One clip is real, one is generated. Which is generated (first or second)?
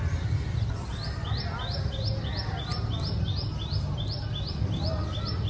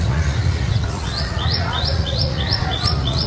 second